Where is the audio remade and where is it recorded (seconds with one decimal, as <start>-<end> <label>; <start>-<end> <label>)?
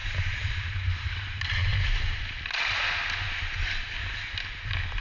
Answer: 0.0-5.0 recorded